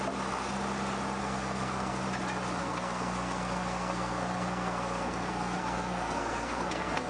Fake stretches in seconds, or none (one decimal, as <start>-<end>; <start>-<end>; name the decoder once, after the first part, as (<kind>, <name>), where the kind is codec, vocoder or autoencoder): 1.2-2.0 (codec, SNAC); 2.6-7.1